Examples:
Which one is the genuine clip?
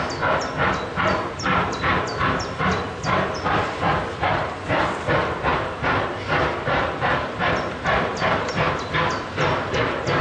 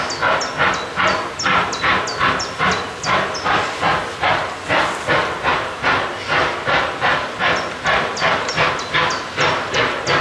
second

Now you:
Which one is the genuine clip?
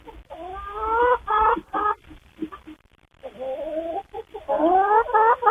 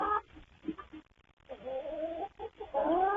second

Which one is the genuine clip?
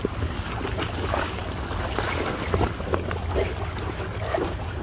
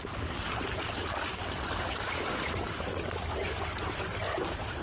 first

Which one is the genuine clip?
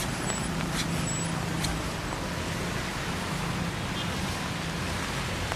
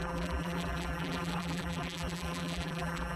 first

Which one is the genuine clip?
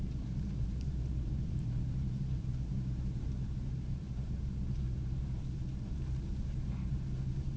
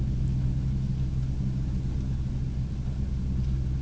second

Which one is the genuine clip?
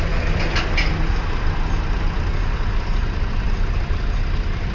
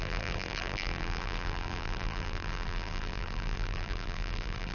first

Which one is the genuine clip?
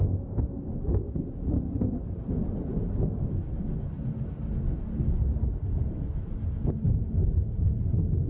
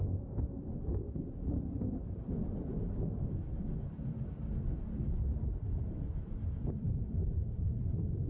first